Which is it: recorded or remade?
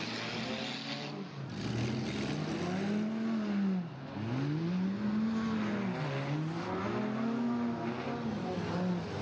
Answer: recorded